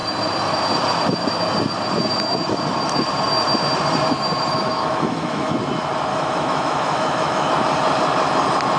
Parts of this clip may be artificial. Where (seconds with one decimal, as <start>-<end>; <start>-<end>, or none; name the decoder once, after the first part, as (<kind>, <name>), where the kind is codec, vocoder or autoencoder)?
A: 4.8-5.5 (autoencoder, DAC-VAE); 6.1-7.5